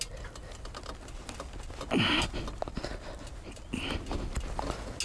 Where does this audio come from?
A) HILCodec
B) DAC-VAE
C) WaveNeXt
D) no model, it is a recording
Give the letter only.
D